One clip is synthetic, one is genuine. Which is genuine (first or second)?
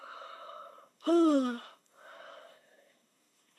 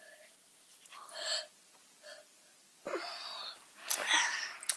second